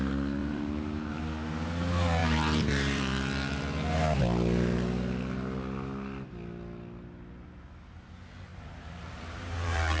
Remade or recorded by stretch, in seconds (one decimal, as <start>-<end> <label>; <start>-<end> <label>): 0.0-0.4 recorded; 0.4-1.2 remade; 1.2-2.2 recorded; 2.2-3.0 remade; 3.0-8.5 recorded; 8.5-10.0 remade